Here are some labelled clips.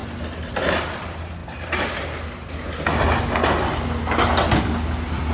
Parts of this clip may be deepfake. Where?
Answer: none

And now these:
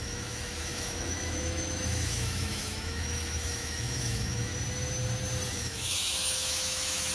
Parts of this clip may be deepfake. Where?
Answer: 0.0-4.5 (autoencoder, DAC-VAE); 5.5-7.1

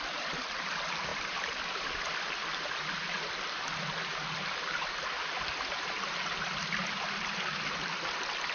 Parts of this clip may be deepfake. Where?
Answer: none

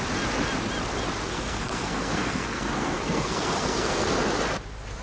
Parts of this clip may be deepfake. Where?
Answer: 1.3-4.1 (codec, SNAC)

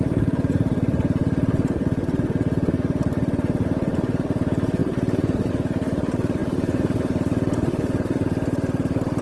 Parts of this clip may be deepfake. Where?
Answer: 4.8-5.5 (vocoder, BigVGAN v2); 6.4-7.0